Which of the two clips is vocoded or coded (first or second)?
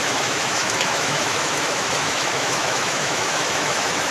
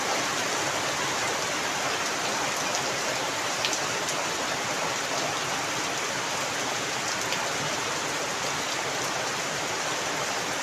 first